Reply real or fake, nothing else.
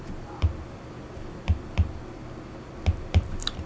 fake